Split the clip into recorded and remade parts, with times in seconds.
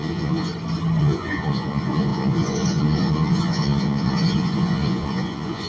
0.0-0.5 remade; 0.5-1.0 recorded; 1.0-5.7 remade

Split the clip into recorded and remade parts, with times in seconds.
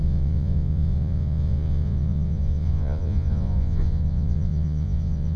0.0-5.4 remade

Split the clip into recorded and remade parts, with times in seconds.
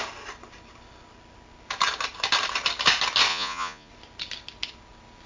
0.0-3.3 recorded; 3.3-3.9 remade; 3.9-5.3 recorded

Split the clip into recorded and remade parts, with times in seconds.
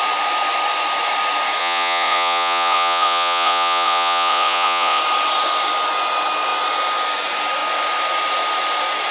0.0-1.6 recorded; 1.6-5.0 remade; 5.0-9.1 recorded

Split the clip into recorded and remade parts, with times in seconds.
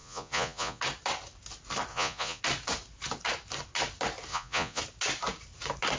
0.0-0.8 remade; 0.8-1.9 recorded; 1.9-2.4 remade; 2.4-4.3 recorded; 4.3-4.8 remade; 4.8-6.0 recorded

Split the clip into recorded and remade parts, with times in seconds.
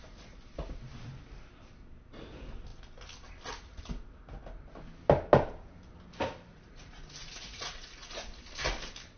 0.0-6.5 recorded; 6.5-8.4 remade; 8.4-9.2 recorded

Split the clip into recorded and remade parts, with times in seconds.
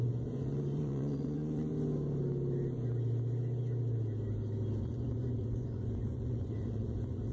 0.0-1.7 remade; 1.7-4.8 recorded; 4.8-7.3 remade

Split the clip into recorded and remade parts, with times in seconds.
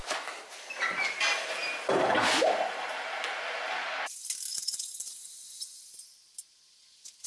0.0-4.5 recorded; 4.5-5.8 remade; 5.8-7.3 recorded